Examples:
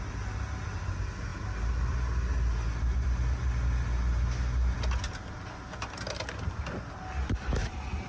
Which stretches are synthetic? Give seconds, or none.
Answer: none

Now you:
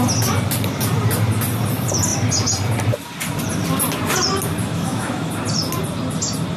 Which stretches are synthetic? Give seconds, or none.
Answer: 4.6-5.3 (autoencoder, DAC-VAE)

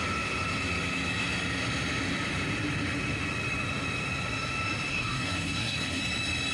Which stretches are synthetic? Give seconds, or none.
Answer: 4.9-6.0 (codec, SNAC)